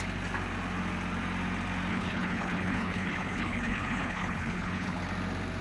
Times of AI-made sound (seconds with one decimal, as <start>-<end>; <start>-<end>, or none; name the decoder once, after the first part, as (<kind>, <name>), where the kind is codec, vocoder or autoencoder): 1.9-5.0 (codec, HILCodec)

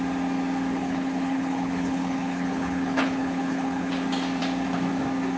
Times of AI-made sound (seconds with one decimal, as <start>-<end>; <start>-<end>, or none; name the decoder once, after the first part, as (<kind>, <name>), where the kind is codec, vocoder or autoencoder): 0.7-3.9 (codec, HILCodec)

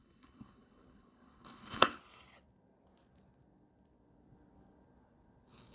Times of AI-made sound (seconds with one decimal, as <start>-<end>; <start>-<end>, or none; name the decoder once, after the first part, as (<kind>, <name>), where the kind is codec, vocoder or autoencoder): 0.0-2.0 (codec, HILCodec)

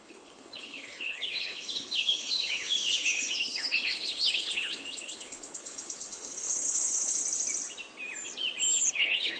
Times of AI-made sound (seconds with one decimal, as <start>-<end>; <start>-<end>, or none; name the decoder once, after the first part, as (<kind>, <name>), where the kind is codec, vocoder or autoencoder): 0.0-7.2 (codec, HILCodec); 8.9-9.4